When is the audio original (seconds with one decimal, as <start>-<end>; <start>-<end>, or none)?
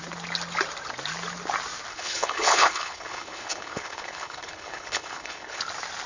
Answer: 0.0-1.9; 5.6-6.1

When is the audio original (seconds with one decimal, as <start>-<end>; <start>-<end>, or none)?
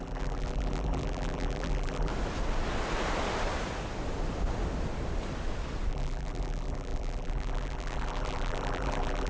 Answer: 2.1-5.9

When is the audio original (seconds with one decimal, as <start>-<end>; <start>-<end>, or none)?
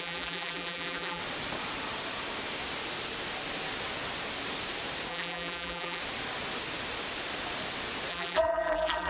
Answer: 1.2-5.1; 6.0-8.1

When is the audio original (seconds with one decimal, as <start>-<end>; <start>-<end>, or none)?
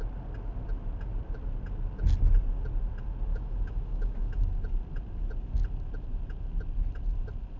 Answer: 0.0-3.3; 4.4-7.6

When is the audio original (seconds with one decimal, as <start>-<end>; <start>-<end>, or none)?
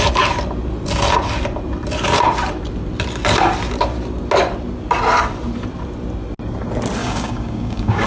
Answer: 0.0-7.0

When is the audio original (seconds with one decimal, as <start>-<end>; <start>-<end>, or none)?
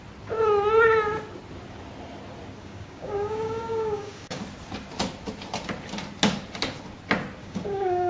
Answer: 0.0-2.6; 4.4-7.4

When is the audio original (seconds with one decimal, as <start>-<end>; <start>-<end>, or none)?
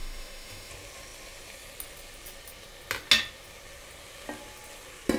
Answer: 0.7-5.2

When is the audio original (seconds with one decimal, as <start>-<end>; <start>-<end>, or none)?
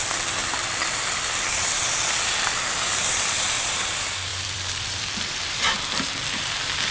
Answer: 0.0-0.4; 3.7-4.3; 6.5-6.9